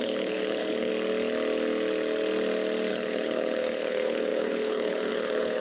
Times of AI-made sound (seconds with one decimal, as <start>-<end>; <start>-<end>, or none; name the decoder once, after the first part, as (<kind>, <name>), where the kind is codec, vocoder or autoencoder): 0.0-0.9 (codec, HILCodec); 2.9-5.6